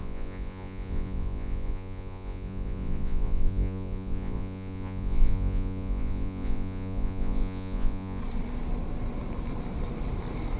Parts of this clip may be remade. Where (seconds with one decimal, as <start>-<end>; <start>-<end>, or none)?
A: 0.0-8.2